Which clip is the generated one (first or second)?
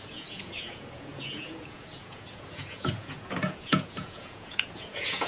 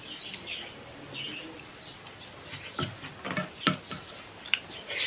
first